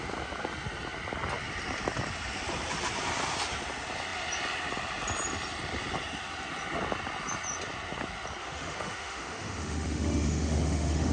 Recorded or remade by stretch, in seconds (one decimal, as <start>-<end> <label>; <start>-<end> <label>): 0.0-8.4 recorded; 8.4-11.1 remade